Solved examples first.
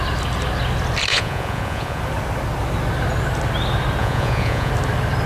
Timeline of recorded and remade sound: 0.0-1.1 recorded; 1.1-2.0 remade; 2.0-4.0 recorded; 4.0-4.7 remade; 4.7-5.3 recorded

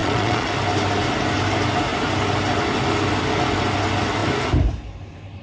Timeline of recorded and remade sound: 0.0-0.5 remade; 0.5-5.4 recorded

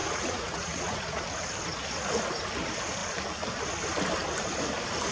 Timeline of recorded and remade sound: 0.0-1.2 remade; 1.2-5.1 recorded

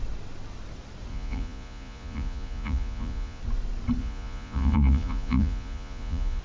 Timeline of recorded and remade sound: 0.0-1.1 recorded; 1.1-3.4 remade; 3.4-4.0 recorded; 4.0-6.4 remade

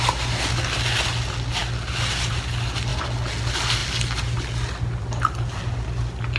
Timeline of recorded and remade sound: 0.0-6.4 recorded

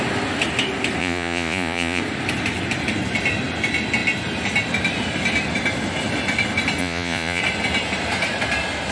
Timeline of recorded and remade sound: 0.0-1.0 recorded; 1.0-2.0 remade; 2.0-6.8 recorded; 6.8-7.4 remade; 7.4-8.9 recorded

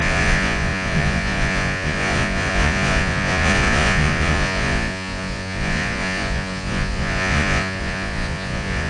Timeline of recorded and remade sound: 0.0-8.9 remade